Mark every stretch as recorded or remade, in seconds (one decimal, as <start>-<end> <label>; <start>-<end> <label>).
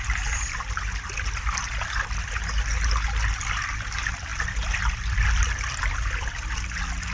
0.0-7.1 recorded